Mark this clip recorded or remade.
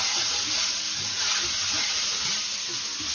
recorded